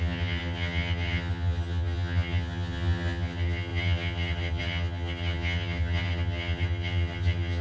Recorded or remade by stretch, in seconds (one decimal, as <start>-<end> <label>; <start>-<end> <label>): 0.0-7.6 remade